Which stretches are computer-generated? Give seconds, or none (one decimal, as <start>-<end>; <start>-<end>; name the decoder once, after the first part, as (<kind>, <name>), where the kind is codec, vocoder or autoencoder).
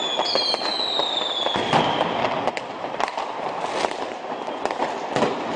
none